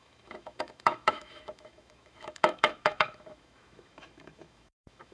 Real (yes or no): no